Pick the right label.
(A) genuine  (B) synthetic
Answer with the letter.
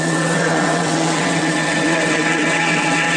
B